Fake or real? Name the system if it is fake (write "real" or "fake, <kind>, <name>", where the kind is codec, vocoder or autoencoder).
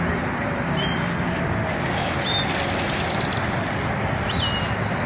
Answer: real